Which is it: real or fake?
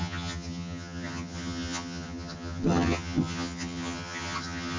fake